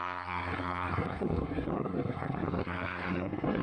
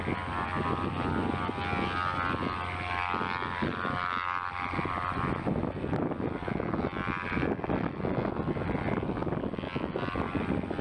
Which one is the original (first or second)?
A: second